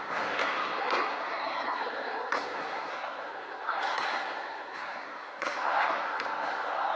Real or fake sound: fake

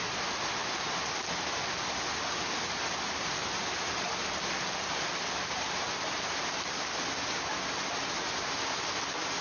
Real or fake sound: real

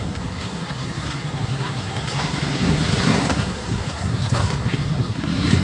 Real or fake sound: fake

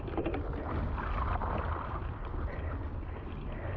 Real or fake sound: real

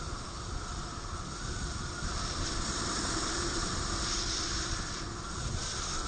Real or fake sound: real